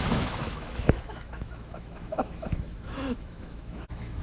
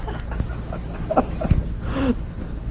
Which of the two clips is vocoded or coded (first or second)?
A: first